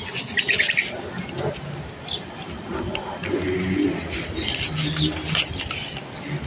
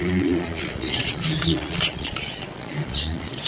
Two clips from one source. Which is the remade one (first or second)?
second